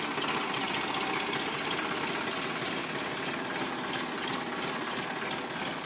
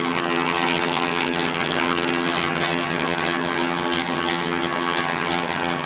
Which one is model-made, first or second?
second